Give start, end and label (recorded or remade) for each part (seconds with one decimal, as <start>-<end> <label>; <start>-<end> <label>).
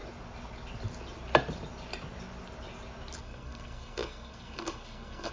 0.0-3.2 recorded; 3.2-5.3 remade